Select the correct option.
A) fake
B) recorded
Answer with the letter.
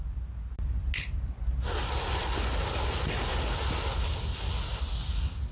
B